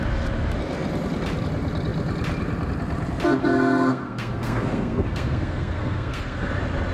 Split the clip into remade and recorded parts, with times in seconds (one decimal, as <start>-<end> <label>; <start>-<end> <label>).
0.0-3.4 recorded; 3.4-6.5 remade; 6.5-6.9 recorded